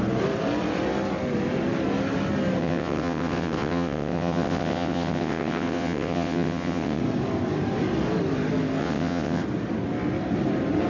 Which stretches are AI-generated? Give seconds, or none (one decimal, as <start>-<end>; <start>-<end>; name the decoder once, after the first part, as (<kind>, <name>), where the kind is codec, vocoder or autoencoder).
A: 2.6-7.0 (vocoder, WaveNeXt); 8.8-9.4